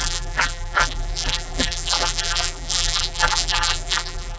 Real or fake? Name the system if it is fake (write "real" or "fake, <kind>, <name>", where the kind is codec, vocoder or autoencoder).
fake, vocoder, BigVGAN v2